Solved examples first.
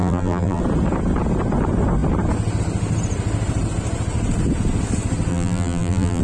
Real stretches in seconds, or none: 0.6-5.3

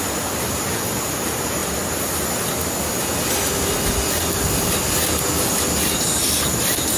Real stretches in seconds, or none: 0.0-7.0

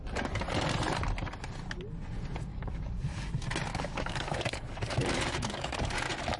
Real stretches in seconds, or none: 0.0-2.5; 3.3-3.7; 6.0-6.4

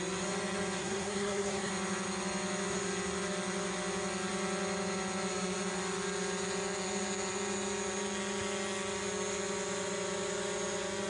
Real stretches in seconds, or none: 0.0-0.8; 1.7-11.1

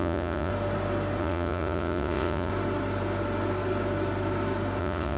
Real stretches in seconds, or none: 0.5-1.2; 2.5-4.8

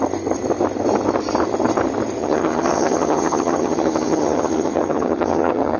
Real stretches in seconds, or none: 0.0-2.2